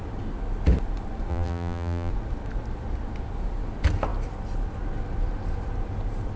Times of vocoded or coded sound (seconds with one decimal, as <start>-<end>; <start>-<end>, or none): 1.3-2.1